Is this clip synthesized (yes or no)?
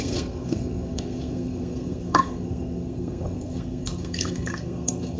yes